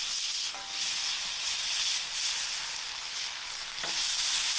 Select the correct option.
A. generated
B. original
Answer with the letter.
B